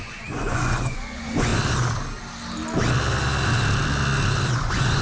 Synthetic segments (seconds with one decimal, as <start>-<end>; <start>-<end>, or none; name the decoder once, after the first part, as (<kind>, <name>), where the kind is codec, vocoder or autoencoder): 0.0-1.5 (vocoder, Vocos); 4.5-5.0